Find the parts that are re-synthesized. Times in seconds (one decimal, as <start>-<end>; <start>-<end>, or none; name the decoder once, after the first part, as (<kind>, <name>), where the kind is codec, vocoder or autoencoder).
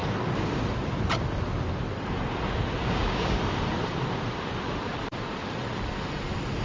2.8-3.4 (codec, DAC)